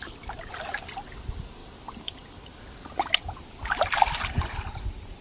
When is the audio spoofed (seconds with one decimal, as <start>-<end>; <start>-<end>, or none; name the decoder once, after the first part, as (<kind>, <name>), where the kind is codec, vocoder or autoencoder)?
1.6-4.7 (vocoder, BigVGAN v2)